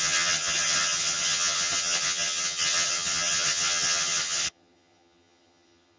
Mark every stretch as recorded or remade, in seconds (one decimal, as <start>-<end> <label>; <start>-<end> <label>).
0.0-6.0 remade